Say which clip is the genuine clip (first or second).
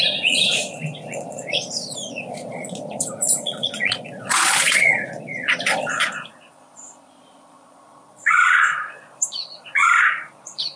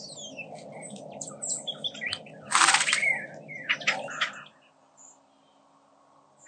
second